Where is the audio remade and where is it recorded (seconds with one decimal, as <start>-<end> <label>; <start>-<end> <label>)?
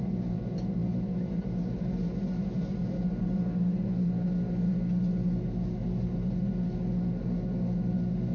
0.0-8.3 recorded